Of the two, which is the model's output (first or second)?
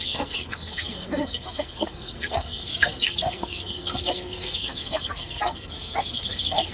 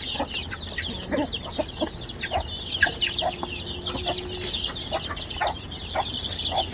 first